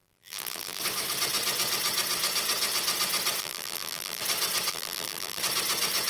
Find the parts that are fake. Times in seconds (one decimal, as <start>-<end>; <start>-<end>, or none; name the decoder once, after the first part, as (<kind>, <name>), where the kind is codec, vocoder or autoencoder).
0.0-0.8 (vocoder, BigVGAN v2); 3.4-4.2; 4.7-5.4